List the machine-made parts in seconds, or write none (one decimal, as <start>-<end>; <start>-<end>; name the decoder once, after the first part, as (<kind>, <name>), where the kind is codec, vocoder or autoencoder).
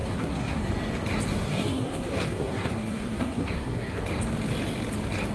0.0-0.7 (codec, SNAC); 1.3-4.0